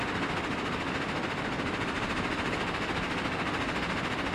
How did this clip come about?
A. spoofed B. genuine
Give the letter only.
B